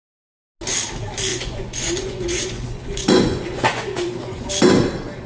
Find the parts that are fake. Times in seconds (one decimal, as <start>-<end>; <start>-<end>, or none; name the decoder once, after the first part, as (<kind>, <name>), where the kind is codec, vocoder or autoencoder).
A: 1.3-4.5 (vocoder, Vocos)